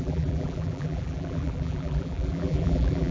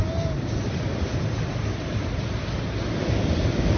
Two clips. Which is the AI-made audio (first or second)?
first